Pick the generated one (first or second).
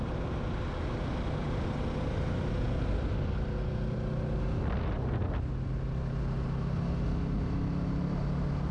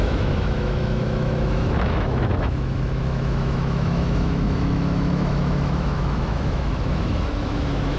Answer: second